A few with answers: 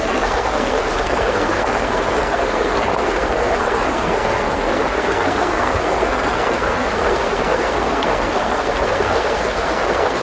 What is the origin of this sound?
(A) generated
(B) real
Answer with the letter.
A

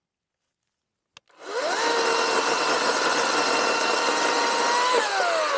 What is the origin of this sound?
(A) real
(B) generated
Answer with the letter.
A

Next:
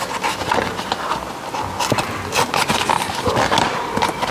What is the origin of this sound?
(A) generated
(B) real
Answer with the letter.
B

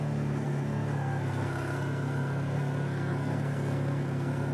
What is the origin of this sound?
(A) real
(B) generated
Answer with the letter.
B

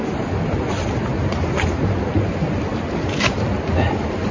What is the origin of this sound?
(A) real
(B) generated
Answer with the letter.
A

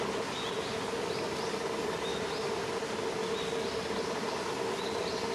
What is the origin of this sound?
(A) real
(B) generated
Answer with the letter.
A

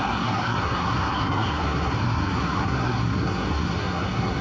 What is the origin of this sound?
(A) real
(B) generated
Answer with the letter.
B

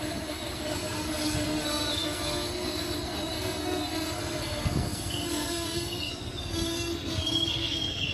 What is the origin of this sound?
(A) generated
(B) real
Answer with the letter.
A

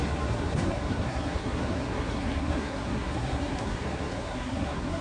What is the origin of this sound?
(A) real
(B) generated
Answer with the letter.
B